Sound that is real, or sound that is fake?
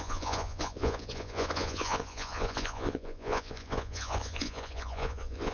fake